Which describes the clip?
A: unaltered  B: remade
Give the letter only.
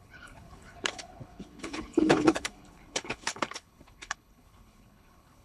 B